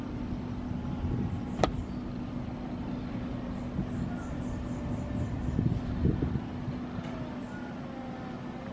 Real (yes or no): yes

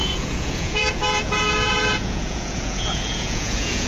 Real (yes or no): no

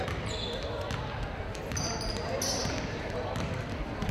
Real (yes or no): yes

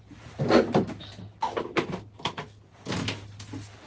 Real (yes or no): yes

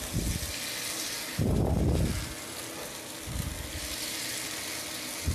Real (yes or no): yes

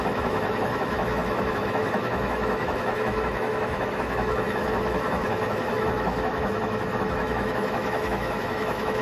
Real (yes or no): no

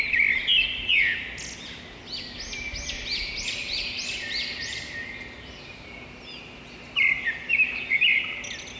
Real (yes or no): yes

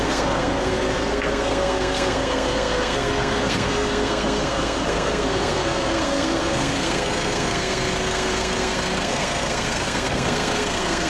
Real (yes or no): no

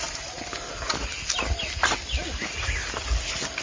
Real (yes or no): yes